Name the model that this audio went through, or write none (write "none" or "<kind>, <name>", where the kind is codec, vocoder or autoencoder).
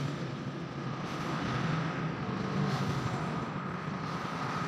none